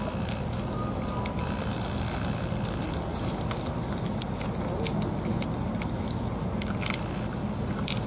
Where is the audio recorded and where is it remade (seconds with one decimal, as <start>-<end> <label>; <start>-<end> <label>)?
0.0-8.1 recorded